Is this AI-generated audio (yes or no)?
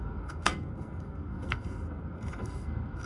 yes